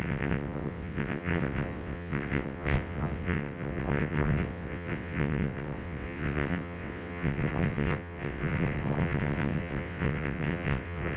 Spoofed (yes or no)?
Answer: yes